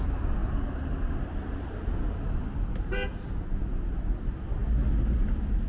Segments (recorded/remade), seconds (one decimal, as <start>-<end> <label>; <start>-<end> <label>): 0.0-5.7 recorded